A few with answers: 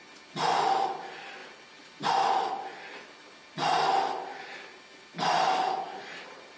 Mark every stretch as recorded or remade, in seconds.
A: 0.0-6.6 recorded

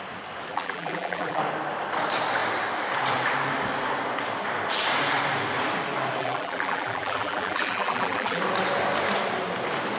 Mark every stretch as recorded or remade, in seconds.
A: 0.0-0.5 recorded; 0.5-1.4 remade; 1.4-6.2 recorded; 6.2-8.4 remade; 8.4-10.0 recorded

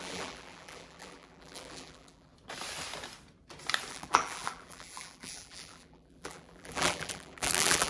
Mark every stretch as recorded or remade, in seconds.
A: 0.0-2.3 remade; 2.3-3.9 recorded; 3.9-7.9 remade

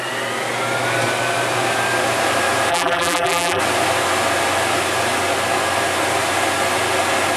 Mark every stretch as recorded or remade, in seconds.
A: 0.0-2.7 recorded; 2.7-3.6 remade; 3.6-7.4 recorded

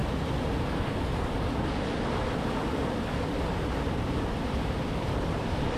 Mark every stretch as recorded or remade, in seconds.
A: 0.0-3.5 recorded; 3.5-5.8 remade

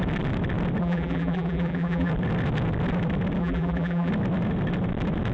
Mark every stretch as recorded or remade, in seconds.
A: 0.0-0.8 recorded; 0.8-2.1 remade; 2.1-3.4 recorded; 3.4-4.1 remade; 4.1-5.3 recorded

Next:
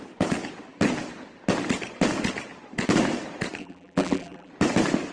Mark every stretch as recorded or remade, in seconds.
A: 0.0-3.6 recorded; 3.6-4.5 remade; 4.5-5.1 recorded

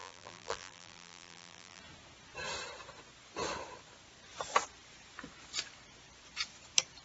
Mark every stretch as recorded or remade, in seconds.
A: 0.0-1.8 remade; 1.8-7.0 recorded